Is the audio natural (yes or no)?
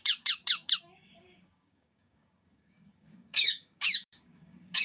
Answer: no